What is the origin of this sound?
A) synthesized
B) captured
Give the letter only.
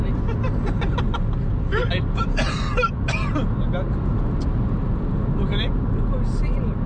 B